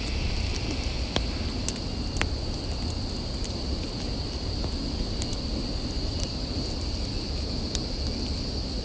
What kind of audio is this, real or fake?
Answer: real